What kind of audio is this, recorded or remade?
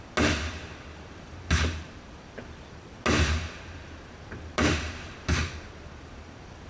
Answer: recorded